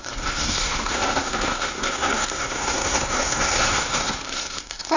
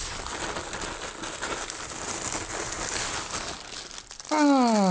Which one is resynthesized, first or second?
first